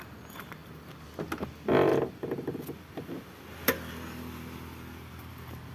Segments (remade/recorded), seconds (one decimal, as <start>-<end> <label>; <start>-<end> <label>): 0.0-5.7 recorded